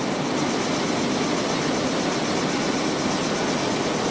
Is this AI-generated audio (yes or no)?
no